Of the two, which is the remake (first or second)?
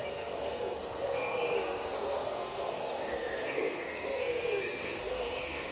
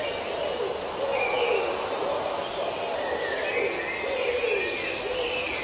first